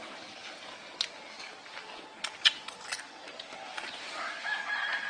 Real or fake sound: real